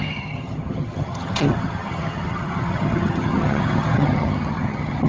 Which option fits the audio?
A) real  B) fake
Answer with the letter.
B